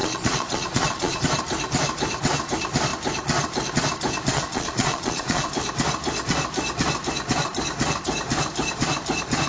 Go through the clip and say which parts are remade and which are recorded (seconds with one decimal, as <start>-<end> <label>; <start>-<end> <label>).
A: 0.0-1.2 remade; 1.2-4.3 recorded; 4.3-5.5 remade; 5.5-9.5 recorded